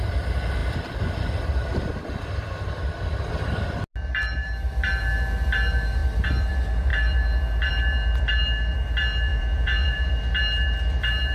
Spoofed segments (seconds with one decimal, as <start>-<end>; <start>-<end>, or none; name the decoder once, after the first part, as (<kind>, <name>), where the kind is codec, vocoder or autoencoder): 9.3-10.1 (vocoder, Vocos)